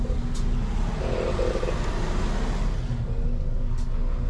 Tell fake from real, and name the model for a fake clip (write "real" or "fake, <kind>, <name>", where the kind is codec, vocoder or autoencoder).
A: real